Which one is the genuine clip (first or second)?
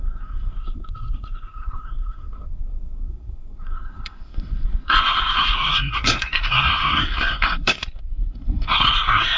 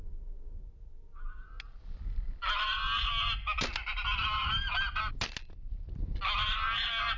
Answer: second